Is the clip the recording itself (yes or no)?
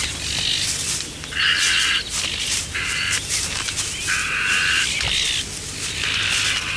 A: yes